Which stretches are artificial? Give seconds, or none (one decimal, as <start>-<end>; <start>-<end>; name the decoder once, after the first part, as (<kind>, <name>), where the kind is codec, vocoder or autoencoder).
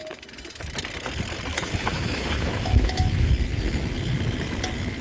1.5-3.3 (autoencoder, DAC-VAE)